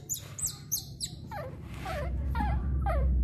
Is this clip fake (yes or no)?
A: yes